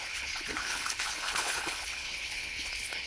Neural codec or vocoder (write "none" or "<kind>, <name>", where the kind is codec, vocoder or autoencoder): codec, HILCodec